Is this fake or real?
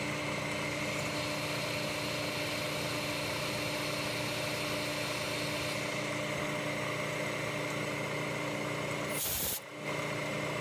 real